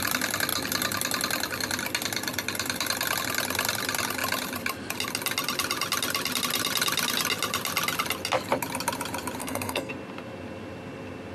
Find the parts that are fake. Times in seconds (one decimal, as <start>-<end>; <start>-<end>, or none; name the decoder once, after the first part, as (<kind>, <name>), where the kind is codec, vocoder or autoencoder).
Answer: 9.4-9.9 (codec, SNAC)